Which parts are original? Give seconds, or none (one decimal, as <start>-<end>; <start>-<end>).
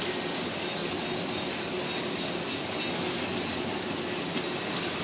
0.0-5.0